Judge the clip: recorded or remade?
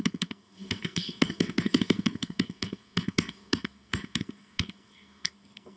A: remade